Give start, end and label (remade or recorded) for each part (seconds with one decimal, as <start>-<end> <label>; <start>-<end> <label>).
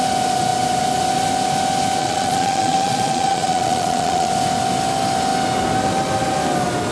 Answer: 0.0-2.0 recorded; 2.0-4.3 remade; 4.3-6.9 recorded